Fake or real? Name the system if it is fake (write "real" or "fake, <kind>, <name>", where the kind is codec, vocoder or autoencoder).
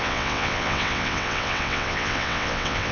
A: fake, vocoder, WaveNeXt